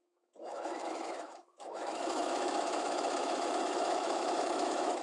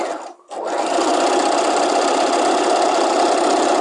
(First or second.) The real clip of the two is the second